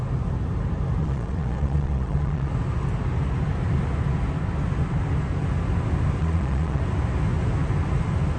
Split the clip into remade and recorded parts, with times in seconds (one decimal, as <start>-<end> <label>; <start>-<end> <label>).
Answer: 0.0-1.0 recorded; 1.0-2.5 remade; 2.5-6.2 recorded; 6.2-6.8 remade; 6.8-8.4 recorded